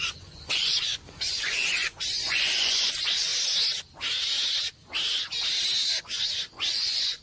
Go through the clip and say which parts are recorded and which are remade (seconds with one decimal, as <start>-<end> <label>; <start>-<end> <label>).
0.0-3.3 remade; 3.3-6.0 recorded; 6.0-7.2 remade